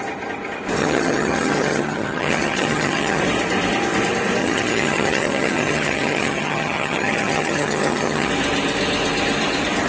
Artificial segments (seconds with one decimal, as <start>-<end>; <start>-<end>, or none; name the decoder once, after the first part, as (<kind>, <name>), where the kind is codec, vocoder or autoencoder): 0.8-3.2 (vocoder, HiFi-GAN); 4.4-8.3